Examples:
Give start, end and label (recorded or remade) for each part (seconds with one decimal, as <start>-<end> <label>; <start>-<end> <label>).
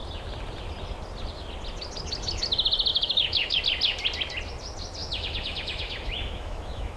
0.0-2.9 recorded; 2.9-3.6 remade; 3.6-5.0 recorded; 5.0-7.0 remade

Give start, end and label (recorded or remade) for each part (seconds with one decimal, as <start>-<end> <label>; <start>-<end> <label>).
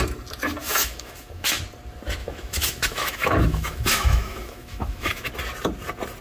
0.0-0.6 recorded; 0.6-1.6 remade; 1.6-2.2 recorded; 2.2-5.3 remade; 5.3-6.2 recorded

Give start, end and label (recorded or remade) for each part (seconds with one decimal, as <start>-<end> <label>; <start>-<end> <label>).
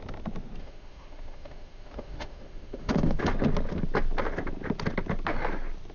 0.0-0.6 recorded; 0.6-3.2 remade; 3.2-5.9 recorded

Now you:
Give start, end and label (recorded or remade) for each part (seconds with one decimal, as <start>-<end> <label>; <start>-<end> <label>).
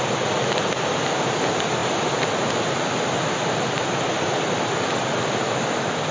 0.0-6.1 recorded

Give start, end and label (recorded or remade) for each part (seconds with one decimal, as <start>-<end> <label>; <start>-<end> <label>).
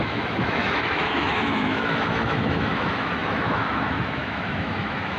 0.0-5.2 remade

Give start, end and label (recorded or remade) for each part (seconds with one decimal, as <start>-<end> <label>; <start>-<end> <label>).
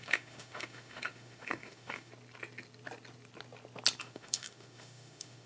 0.0-2.1 remade; 2.1-4.0 recorded; 4.0-5.5 remade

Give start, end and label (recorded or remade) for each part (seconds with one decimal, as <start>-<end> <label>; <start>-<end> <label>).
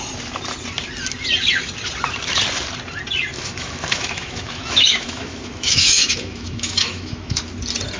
0.0-3.3 recorded; 3.3-7.4 remade; 7.4-8.0 recorded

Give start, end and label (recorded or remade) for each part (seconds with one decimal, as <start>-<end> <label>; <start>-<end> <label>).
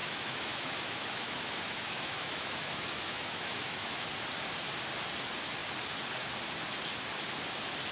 0.0-4.1 remade; 4.1-7.9 recorded